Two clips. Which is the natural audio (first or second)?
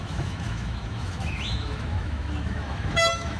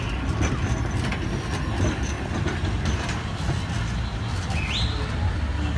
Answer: second